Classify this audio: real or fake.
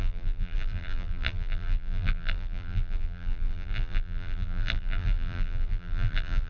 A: fake